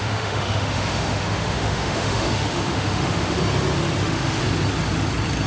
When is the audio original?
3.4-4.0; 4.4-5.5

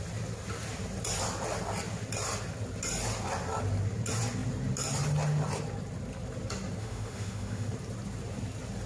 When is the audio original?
0.0-6.8; 7.7-8.9

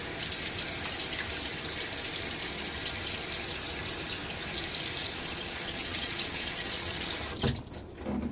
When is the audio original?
0.0-5.0; 7.1-8.3

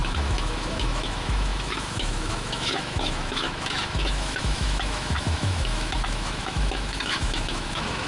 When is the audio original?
none

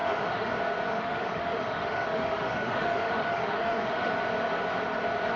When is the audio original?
0.5-0.9; 4.1-5.4

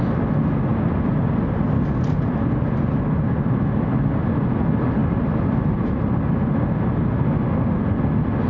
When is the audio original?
0.0-8.5

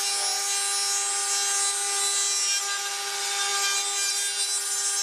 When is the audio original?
0.0-5.0

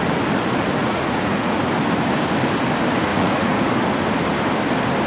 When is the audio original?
0.0-0.8; 1.6-3.1; 3.7-5.1